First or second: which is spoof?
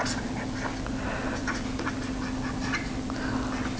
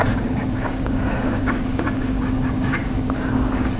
second